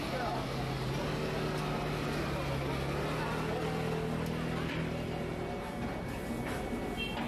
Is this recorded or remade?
recorded